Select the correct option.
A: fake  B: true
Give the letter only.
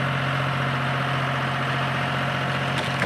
B